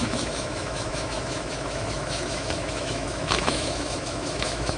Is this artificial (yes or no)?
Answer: yes